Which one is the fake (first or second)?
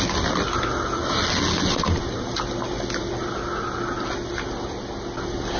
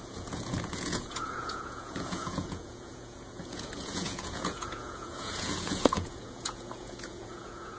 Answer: second